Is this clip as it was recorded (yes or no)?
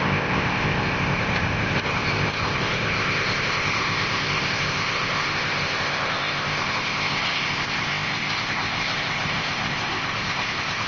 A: no